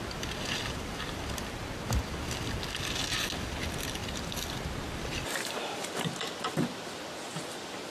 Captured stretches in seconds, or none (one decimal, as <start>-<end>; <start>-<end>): 0.0-4.0